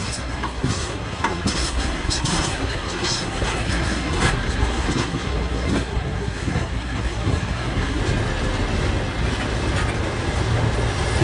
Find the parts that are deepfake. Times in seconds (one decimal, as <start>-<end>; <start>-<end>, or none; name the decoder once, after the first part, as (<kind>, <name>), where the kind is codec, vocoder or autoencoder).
0.0-8.0 (codec, SNAC)